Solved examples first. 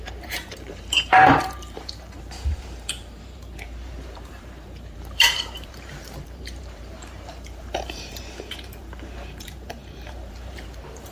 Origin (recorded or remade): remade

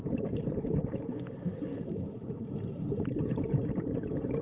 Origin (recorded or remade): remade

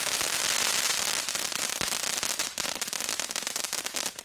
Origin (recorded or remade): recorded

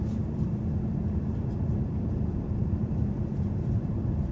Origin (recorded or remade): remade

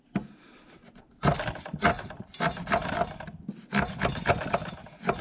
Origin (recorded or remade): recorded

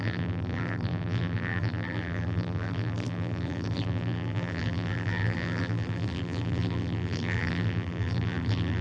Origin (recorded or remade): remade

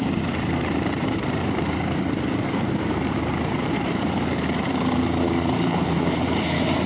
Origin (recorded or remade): remade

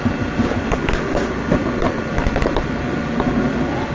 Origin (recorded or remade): remade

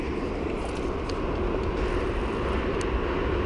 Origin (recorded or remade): recorded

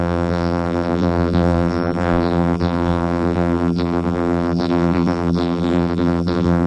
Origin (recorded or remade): remade